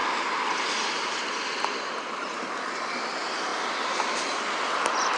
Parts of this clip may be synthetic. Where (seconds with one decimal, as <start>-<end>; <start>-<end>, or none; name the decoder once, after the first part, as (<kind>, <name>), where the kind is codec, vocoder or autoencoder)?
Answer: none